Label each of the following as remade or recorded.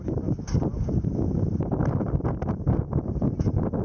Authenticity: recorded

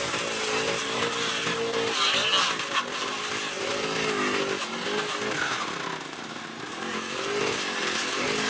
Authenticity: recorded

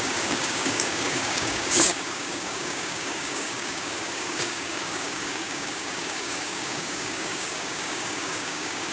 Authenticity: remade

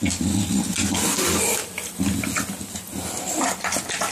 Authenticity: recorded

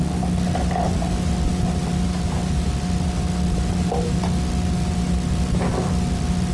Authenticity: recorded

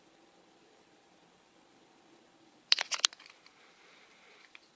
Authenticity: remade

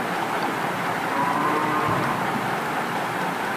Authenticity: recorded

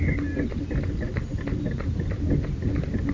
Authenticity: recorded